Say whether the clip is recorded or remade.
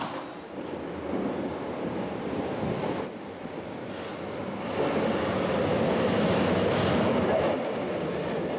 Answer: recorded